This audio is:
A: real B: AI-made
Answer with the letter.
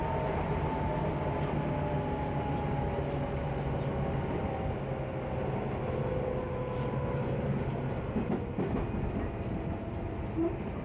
A